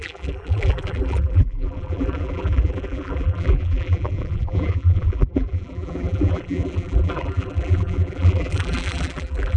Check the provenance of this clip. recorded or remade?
remade